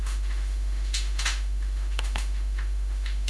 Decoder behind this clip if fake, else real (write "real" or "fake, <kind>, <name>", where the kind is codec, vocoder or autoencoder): fake, autoencoder, DAC-VAE